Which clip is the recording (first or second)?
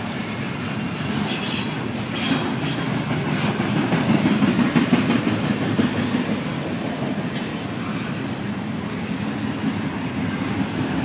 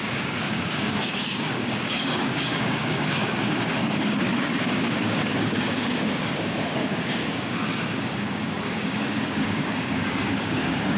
first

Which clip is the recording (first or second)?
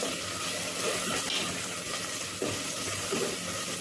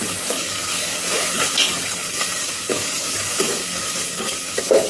first